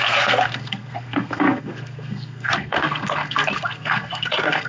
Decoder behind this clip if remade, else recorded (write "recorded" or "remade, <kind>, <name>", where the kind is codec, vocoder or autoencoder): remade, codec, SNAC